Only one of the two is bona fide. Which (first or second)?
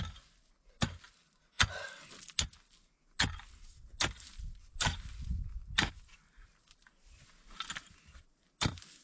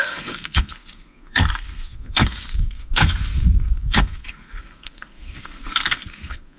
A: first